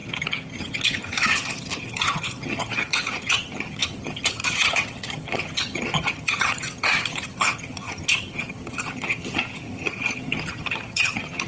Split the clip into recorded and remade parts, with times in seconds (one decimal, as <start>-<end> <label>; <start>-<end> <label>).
0.0-11.5 remade